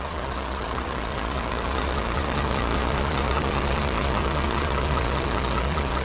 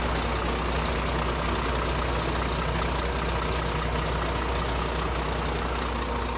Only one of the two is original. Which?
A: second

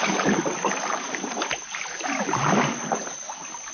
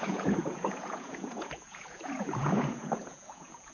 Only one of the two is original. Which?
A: first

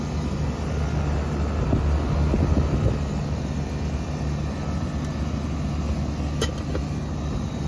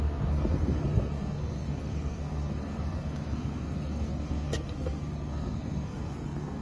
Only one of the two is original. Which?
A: first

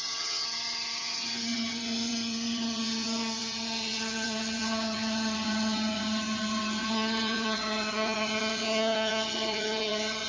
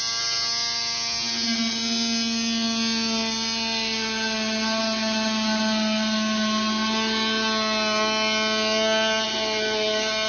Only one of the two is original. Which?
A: second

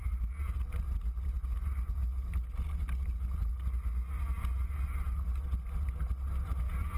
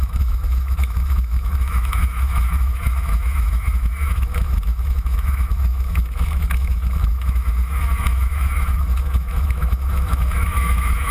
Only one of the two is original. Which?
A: first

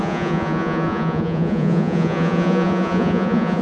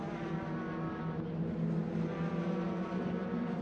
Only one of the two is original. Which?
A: second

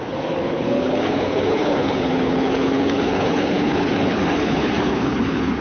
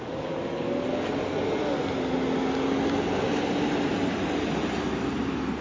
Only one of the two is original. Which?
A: second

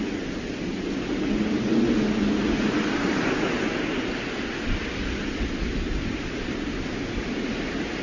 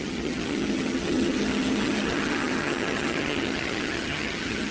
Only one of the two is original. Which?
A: first